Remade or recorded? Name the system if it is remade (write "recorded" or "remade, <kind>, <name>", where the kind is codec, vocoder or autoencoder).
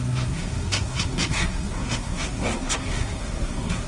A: remade, codec, SNAC